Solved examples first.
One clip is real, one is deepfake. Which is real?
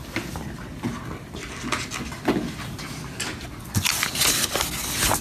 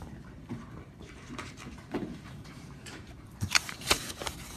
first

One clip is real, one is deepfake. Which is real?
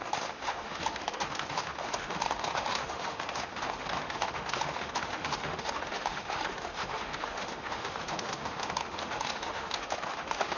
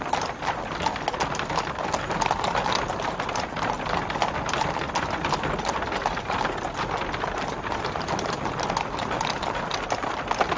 second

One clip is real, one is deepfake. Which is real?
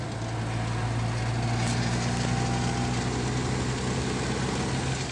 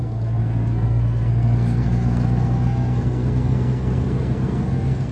first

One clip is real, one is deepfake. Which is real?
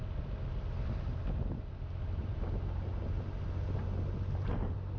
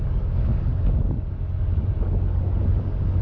first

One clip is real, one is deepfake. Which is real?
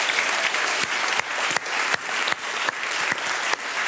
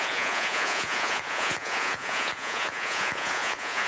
first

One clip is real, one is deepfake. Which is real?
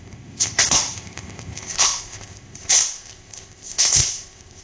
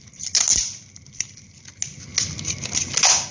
second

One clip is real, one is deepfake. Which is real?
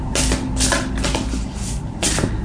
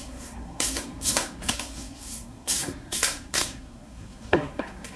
first